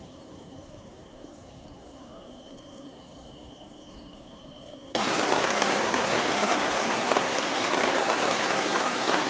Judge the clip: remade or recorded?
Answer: remade